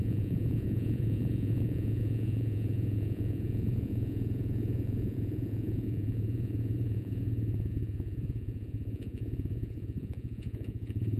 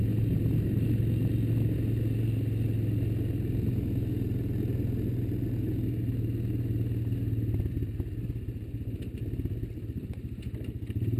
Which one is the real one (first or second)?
second